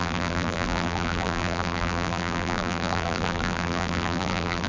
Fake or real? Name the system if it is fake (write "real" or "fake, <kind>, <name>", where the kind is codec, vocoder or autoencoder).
fake, vocoder, BigVGAN v2